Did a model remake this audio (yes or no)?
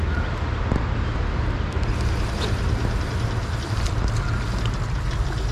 no